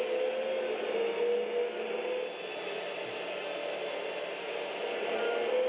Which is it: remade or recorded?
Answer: recorded